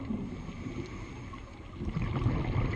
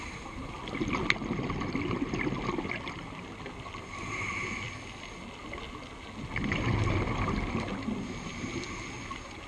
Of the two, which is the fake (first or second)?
first